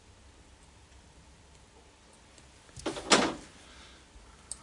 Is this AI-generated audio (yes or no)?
no